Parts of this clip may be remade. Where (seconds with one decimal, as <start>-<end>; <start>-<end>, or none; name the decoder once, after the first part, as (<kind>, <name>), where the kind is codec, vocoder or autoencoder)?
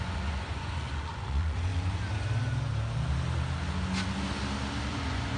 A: 0.0-1.7 (vocoder, Vocos); 4.9-5.4